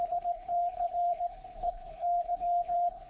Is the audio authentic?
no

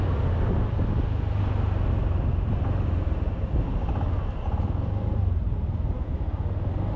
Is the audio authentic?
yes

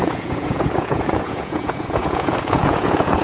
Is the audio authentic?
no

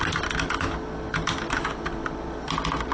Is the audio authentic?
yes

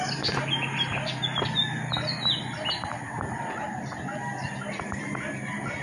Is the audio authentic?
yes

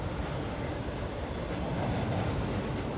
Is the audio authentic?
yes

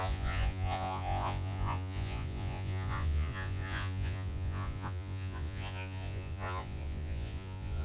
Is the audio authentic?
no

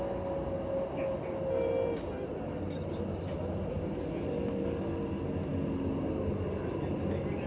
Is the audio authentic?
yes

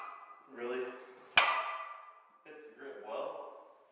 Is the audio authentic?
yes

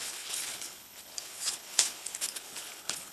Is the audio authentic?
no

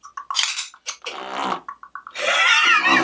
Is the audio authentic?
yes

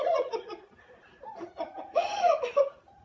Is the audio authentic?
no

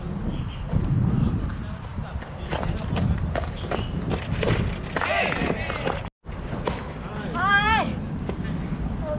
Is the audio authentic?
yes